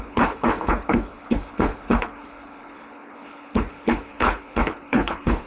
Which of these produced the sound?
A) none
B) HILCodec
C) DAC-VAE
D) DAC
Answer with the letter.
B